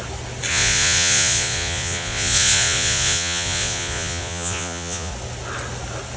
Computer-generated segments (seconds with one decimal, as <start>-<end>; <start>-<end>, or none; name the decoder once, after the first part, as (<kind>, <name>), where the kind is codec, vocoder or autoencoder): 0.5-5.1 (vocoder, Vocos)